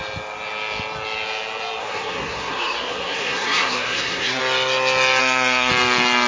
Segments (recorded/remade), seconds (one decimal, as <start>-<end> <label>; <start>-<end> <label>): 0.0-1.8 recorded; 1.8-4.4 remade; 4.4-5.2 recorded; 5.2-5.7 remade; 5.7-6.3 recorded